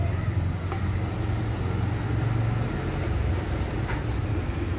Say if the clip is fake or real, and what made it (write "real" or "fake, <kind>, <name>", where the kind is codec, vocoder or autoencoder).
real